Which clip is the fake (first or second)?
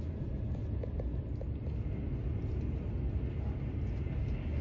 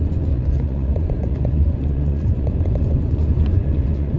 second